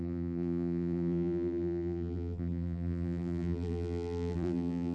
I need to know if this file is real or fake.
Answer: fake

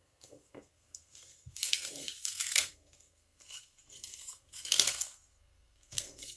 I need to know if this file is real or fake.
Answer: fake